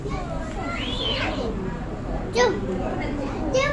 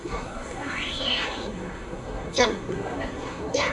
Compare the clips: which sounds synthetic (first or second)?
second